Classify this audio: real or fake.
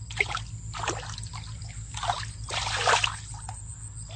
real